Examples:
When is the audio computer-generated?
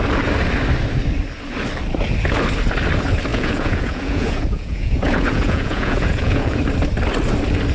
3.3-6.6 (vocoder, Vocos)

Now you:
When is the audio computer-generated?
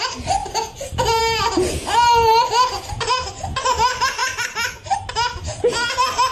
none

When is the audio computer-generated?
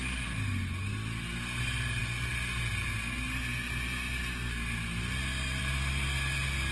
none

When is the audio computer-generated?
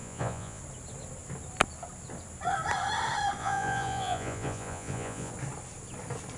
0.0-0.6 (vocoder, Vocos); 3.4-5.3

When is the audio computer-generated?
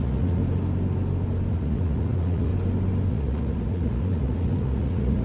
0.0-0.4 (vocoder, Vocos); 1.5-2.5; 3.1-5.2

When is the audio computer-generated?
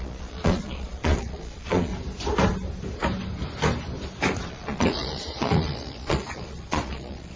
0.0-1.9 (vocoder, Vocos); 4.5-7.4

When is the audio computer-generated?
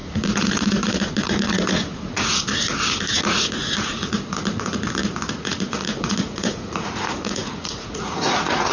0.0-2.5 (vocoder, Vocos); 3.1-8.7